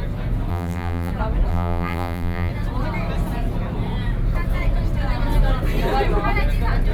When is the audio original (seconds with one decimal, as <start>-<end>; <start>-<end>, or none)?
0.0-0.5; 1.1-1.5; 2.5-6.9